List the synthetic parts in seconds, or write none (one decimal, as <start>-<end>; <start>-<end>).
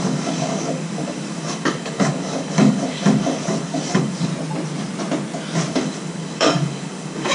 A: 0.0-4.3; 5.7-7.3